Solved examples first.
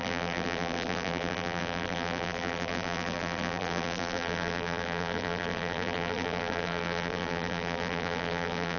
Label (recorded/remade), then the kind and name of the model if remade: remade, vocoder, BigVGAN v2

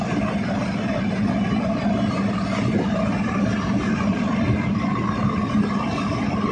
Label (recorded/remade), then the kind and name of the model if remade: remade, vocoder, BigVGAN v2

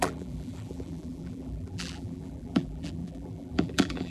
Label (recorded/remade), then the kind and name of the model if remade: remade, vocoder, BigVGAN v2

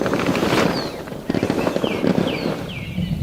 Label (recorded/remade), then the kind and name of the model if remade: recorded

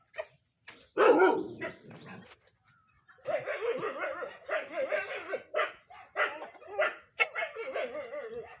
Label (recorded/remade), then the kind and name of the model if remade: recorded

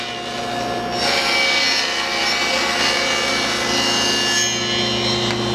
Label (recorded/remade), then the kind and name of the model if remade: recorded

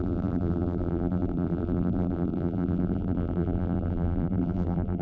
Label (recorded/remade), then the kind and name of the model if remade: remade, vocoder, BigVGAN v2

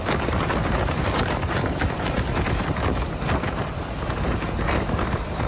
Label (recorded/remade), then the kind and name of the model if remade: remade, vocoder, BigVGAN v2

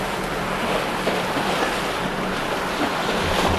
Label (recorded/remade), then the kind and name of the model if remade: remade, vocoder, BigVGAN v2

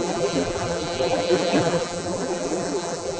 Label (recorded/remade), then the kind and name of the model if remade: remade, vocoder, BigVGAN v2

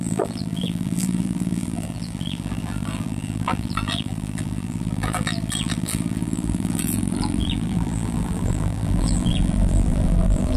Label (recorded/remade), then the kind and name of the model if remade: remade, vocoder, BigVGAN v2